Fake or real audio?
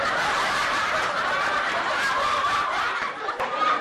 fake